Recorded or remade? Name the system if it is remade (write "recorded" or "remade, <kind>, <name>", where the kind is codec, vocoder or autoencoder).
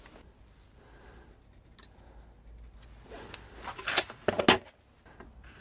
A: recorded